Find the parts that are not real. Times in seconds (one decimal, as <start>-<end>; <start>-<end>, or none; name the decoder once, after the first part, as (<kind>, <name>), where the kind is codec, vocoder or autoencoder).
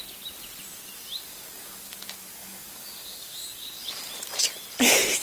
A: 1.3-2.0 (codec, DAC); 2.4-3.9